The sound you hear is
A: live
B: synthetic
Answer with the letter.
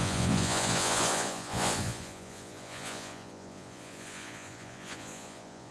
B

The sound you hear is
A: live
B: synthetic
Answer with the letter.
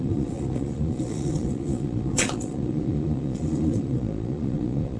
B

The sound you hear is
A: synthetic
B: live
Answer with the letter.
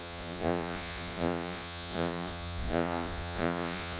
A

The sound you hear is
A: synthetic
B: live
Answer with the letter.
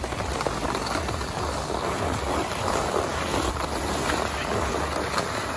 B